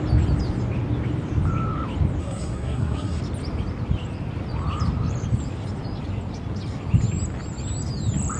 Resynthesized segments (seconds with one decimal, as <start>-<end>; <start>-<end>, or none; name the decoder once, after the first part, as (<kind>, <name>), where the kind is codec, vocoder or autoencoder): 2.2-3.2 (codec, SNAC)